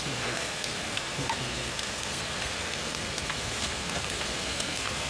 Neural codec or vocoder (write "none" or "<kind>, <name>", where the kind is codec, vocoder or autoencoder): codec, SNAC